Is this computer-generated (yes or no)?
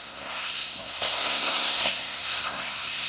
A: yes